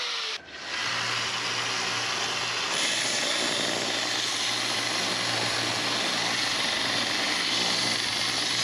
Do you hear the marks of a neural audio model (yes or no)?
no